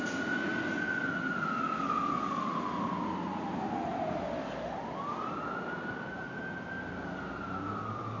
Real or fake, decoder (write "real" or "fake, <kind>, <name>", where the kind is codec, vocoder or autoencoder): real